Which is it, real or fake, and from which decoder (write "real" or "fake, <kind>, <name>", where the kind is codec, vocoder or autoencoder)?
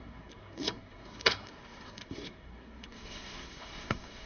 fake, codec, SNAC